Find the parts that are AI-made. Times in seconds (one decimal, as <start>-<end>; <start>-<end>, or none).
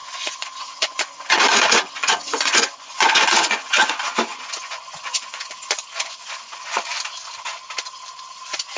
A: 0.0-3.9; 4.3-7.0